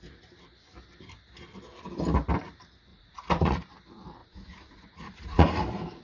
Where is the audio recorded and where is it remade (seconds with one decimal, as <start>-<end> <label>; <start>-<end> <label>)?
0.0-2.9 recorded; 2.9-3.7 remade; 3.7-4.2 recorded; 4.2-5.5 remade; 5.5-6.0 recorded